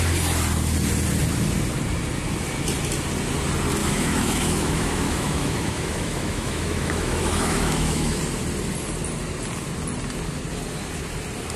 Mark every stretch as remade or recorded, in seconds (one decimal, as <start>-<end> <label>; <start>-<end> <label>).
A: 0.0-3.8 recorded; 3.8-8.2 remade; 8.2-11.6 recorded